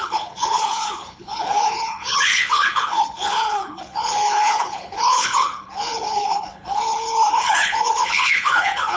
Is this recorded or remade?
remade